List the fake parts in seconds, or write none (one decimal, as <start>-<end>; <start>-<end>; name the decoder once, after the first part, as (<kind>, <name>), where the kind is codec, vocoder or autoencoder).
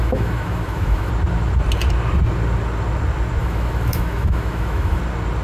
0.0-1.1 (autoencoder, DAC-VAE); 3.4-5.0